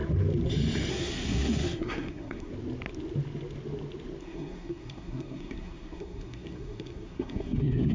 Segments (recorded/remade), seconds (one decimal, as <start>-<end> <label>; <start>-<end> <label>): 0.0-0.9 recorded; 0.9-2.5 remade; 2.5-4.2 recorded; 4.2-7.9 remade